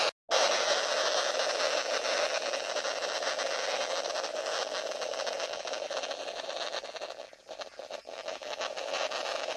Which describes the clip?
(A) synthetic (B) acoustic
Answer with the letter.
B